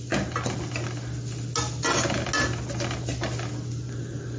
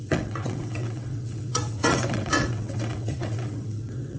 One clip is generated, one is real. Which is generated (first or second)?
second